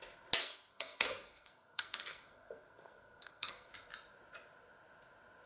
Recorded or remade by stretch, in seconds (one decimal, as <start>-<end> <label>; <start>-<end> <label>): 0.0-0.4 recorded; 0.4-3.7 remade; 3.7-5.5 recorded

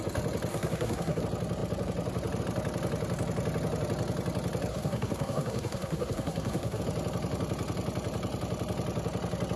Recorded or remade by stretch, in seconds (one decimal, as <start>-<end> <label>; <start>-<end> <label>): 0.0-0.5 recorded; 0.5-1.2 remade; 1.2-4.7 recorded; 4.7-6.8 remade; 6.8-9.6 recorded

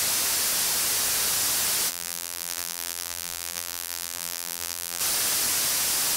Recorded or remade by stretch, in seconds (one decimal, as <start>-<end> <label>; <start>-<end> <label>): 0.0-1.9 recorded; 1.9-5.0 remade; 5.0-6.2 recorded